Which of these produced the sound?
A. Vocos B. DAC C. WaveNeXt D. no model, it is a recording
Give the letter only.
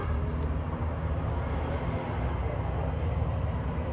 D